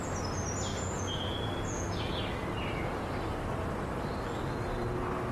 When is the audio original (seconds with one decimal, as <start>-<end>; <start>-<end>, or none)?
0.0-0.7; 2.2-5.3